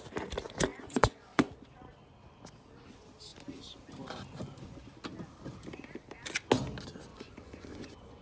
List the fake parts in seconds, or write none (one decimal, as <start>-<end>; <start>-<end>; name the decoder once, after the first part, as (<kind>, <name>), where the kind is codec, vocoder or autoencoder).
0.7-1.5 (vocoder, Vocos); 7.1-8.2